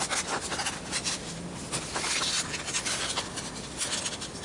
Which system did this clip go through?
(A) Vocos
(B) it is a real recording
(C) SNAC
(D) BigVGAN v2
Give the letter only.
B